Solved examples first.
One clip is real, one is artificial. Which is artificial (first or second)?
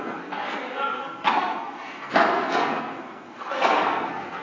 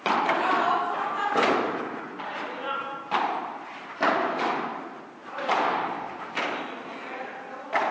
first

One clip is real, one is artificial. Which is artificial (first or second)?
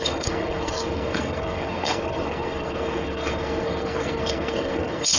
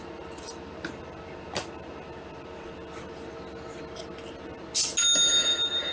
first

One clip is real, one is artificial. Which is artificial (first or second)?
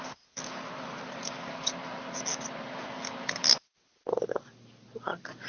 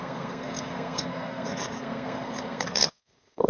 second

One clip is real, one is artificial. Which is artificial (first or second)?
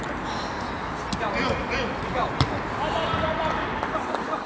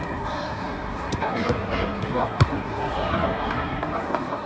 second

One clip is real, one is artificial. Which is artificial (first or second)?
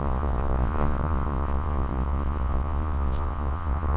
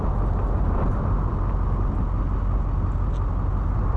first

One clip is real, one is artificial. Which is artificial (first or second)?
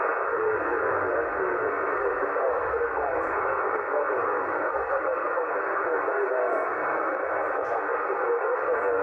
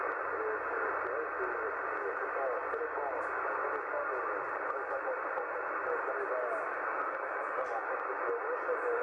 first